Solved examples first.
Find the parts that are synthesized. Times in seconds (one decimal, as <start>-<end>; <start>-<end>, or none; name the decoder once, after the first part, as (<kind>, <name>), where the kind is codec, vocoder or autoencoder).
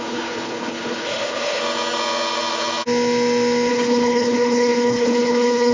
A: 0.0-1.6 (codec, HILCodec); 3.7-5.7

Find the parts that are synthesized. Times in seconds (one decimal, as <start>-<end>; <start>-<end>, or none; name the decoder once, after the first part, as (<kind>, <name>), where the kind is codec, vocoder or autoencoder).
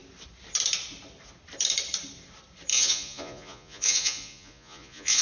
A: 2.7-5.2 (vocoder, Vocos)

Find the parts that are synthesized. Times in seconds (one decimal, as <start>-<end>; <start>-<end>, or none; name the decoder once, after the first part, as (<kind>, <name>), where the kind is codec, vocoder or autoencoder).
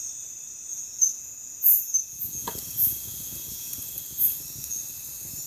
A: 0.7-4.0 (vocoder, Vocos)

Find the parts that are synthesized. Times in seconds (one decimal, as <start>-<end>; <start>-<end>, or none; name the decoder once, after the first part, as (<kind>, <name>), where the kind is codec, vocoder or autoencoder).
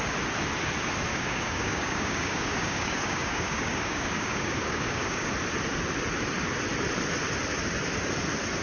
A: 1.1-5.3 (codec, DAC)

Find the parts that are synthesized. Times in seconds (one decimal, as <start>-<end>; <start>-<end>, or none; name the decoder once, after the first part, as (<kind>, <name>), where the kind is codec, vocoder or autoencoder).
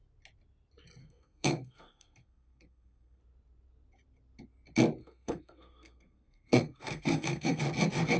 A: 1.0-3.2 (codec, SNAC); 5.0-7.6